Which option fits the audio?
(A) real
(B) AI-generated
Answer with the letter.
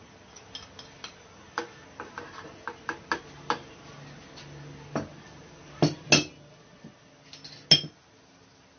A